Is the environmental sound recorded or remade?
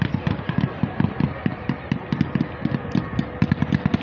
recorded